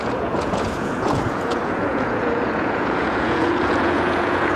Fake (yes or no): yes